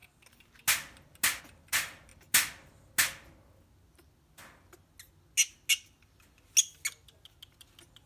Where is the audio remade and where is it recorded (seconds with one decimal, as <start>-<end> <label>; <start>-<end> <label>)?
0.0-8.1 recorded